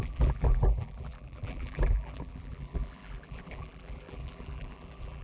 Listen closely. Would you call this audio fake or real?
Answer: fake